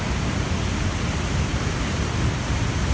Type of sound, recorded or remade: recorded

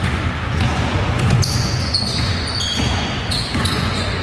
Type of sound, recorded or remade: remade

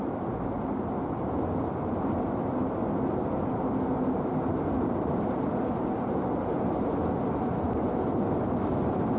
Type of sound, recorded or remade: recorded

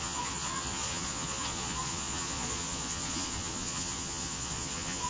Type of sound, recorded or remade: remade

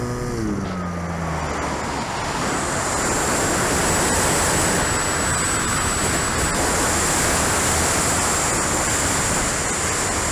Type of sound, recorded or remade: recorded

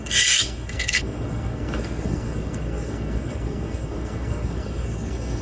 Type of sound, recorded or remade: remade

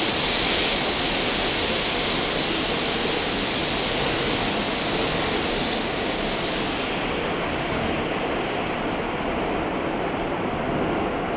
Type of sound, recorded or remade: recorded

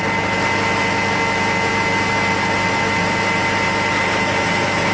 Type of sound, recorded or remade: recorded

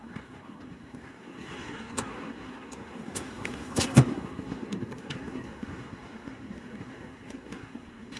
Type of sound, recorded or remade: remade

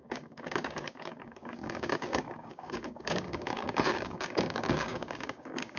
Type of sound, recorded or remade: remade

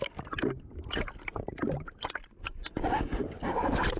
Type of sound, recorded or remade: recorded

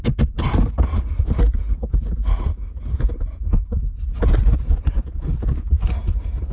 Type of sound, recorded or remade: recorded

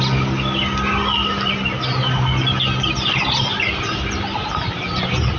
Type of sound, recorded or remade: recorded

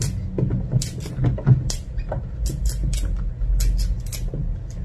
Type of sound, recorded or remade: recorded